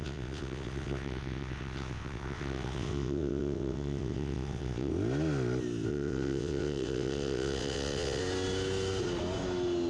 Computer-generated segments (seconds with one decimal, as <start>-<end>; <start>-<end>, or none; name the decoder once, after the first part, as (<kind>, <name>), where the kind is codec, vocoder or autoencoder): 0.0-4.9 (vocoder, WaveNeXt); 5.9-8.2